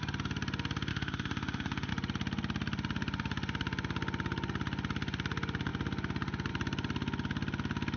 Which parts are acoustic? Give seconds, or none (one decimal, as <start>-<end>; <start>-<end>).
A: 0.0-0.9; 1.9-8.0